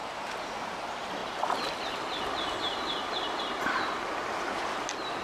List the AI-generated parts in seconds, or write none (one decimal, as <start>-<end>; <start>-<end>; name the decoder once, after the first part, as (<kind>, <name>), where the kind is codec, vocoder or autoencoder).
1.2-3.4 (vocoder, BigVGAN v2)